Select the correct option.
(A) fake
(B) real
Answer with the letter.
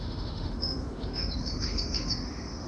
A